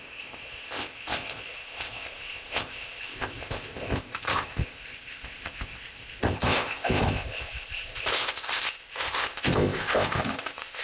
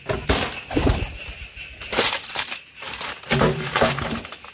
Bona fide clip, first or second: second